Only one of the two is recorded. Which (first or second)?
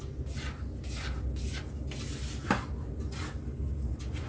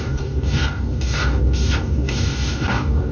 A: first